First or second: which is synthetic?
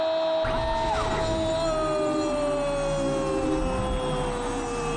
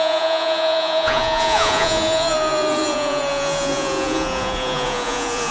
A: second